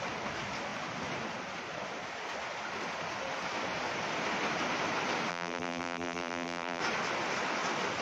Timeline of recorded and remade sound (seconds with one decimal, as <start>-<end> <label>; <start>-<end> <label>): 0.0-5.3 recorded; 5.3-6.8 remade; 6.8-8.0 recorded